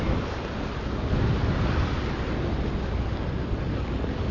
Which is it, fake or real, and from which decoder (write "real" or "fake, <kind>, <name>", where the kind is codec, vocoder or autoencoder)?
real